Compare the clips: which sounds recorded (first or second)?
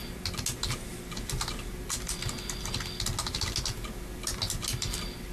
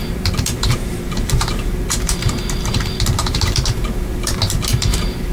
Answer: first